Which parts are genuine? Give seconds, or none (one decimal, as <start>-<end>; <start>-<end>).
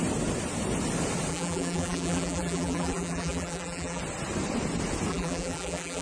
0.0-1.3; 4.0-5.1